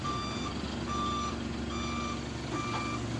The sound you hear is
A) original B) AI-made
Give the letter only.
A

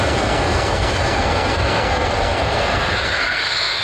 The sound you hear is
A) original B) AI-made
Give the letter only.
B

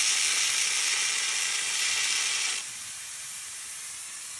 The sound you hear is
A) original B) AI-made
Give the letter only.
A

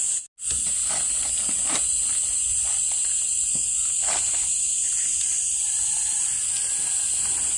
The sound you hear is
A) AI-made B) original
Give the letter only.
B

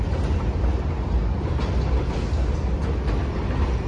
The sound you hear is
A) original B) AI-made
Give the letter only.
A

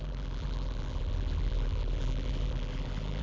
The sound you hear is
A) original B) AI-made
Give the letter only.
B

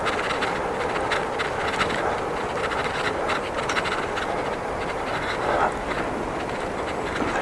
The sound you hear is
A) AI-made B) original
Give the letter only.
B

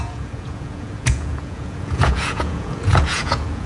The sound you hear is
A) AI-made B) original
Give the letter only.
A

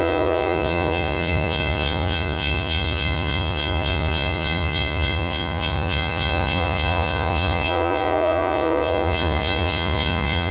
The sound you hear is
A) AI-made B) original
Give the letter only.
A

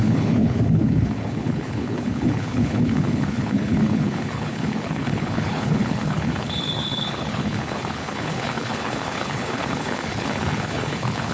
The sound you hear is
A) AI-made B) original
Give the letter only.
A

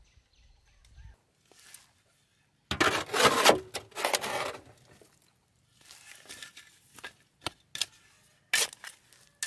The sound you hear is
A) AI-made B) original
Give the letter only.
B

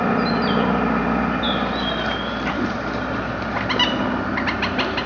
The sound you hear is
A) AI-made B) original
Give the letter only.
B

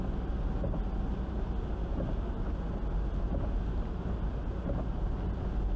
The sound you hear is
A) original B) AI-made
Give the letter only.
A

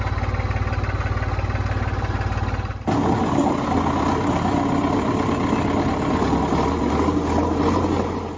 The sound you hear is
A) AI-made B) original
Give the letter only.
B